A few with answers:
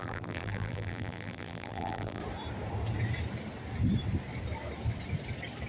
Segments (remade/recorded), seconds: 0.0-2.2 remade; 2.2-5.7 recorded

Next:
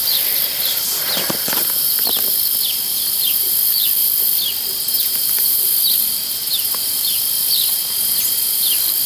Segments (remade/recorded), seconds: 0.0-7.8 remade; 7.8-8.4 recorded; 8.4-9.1 remade